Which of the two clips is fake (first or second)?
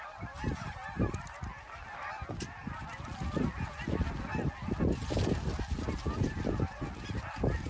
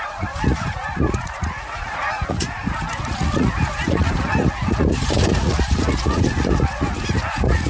second